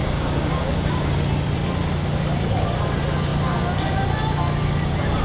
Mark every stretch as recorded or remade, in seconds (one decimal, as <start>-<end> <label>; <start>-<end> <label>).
0.0-1.2 remade; 1.2-5.2 recorded